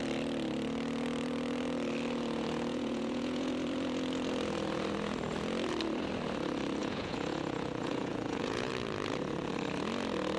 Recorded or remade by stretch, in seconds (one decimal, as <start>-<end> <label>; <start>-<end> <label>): 0.0-2.7 recorded; 2.7-3.5 remade; 3.5-6.8 recorded; 6.8-8.7 remade; 8.7-10.4 recorded